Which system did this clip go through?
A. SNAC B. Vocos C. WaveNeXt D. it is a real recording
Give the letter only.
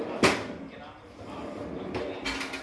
D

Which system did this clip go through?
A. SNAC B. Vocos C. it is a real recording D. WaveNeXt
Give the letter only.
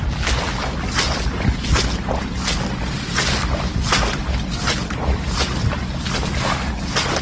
C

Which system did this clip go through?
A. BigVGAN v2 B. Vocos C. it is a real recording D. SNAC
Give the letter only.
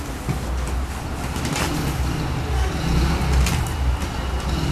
C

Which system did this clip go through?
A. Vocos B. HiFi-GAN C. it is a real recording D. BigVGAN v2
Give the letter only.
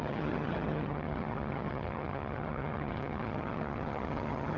B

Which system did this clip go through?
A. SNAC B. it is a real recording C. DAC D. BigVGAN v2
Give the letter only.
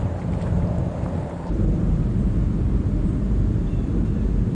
D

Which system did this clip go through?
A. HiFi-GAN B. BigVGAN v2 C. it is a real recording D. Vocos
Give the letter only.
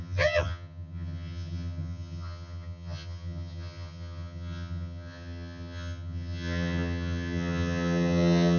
A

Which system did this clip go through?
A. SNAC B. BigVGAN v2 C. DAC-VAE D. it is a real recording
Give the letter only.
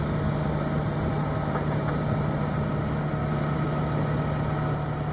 D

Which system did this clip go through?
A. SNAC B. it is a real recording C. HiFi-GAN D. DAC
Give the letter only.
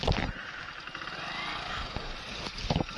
B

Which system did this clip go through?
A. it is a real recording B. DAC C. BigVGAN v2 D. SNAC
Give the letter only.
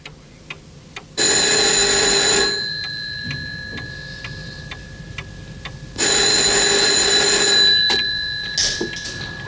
A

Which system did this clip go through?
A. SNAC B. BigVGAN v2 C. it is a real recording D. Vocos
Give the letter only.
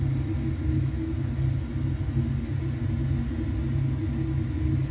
C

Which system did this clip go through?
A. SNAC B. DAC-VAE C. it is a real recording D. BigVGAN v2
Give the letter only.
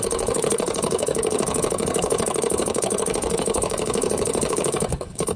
A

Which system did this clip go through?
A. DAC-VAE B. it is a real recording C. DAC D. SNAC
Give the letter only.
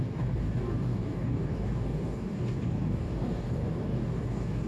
C